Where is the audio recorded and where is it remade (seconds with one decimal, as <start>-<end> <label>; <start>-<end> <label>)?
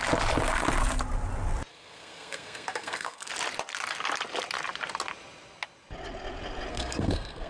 0.0-1.7 recorded; 1.7-3.3 remade; 3.3-6.7 recorded; 6.7-7.5 remade